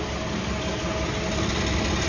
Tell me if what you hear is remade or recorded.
recorded